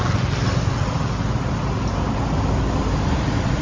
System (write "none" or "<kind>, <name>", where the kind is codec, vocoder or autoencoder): none